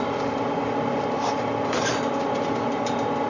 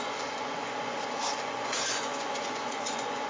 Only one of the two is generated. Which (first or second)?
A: second